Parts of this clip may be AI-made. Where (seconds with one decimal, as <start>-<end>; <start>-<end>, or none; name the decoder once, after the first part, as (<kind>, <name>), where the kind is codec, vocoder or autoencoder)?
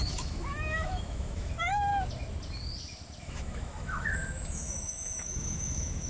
0.0-1.9 (autoencoder, DAC-VAE); 3.2-6.1